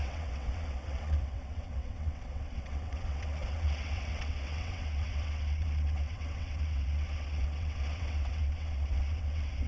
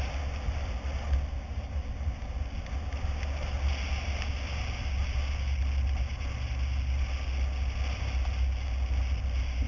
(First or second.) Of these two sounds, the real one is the second